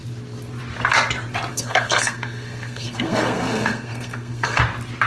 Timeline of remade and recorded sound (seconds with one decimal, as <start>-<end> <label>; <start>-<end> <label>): 0.0-1.5 recorded; 1.5-4.6 remade; 4.6-5.1 recorded